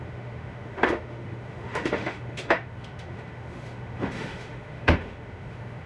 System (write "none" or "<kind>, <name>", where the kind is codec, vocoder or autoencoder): autoencoder, DAC-VAE